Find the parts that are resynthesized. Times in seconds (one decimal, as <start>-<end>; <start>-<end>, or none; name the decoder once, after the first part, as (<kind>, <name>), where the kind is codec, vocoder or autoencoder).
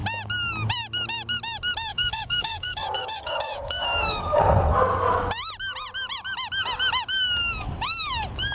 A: 1.9-4.4 (codec, DAC)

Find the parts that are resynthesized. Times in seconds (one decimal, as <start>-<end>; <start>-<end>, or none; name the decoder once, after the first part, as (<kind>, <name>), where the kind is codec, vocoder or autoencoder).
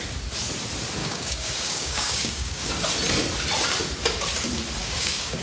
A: 1.0-2.7 (codec, DAC); 4.8-5.4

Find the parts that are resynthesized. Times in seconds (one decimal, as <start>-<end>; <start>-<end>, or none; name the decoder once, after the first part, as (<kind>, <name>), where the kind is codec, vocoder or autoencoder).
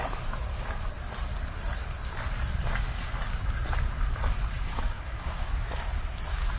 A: 4.7-5.5 (codec, DAC)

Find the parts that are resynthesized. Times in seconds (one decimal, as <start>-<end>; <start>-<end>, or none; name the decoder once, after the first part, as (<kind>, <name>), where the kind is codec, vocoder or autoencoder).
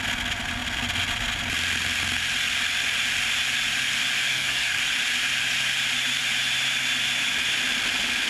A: 4.3-4.8 (codec, DAC)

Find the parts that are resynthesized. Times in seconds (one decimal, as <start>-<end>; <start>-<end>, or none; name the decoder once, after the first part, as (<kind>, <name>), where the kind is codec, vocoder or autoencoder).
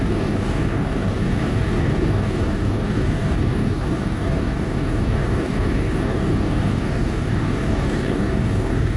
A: 0.0-9.0 (codec, DAC)